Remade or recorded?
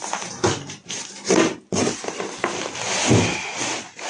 recorded